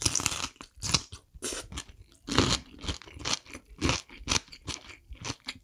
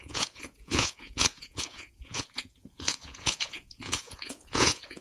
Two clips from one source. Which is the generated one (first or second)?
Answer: second